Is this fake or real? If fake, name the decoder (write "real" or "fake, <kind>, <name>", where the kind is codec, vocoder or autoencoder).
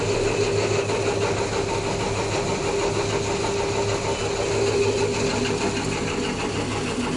real